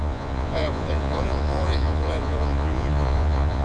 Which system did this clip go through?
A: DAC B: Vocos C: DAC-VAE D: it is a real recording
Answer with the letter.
B